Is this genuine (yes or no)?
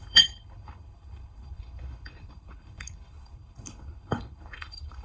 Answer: no